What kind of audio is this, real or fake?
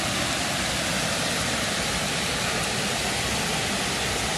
real